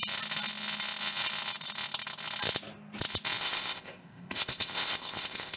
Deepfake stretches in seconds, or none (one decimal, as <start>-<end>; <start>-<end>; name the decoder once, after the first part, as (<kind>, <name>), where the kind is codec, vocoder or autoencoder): 3.4-5.6 (codec, ZipCodec)